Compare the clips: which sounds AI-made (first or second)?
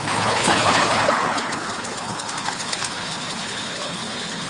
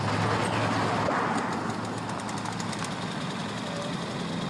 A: first